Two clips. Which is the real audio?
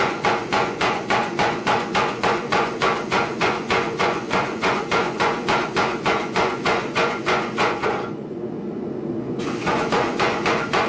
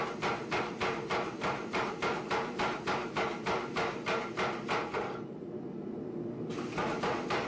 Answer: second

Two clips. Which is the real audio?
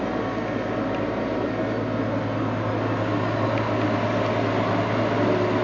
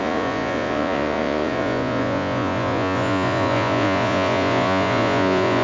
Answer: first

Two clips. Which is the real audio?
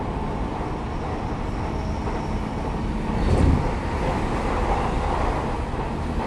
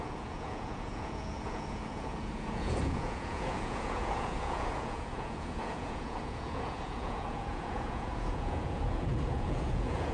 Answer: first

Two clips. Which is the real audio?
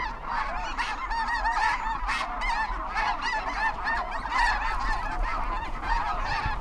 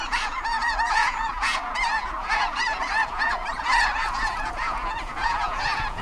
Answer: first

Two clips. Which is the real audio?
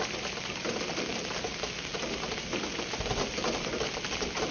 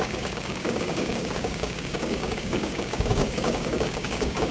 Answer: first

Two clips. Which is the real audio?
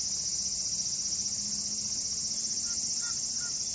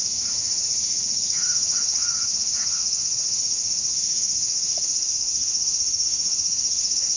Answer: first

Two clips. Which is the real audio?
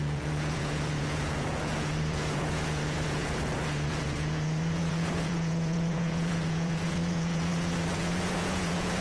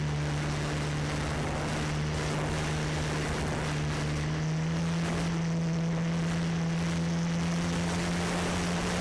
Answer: second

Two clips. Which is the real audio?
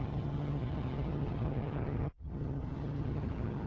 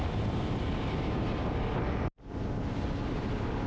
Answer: second